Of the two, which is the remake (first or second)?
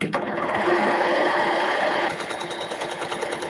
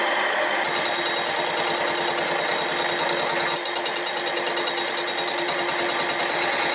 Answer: first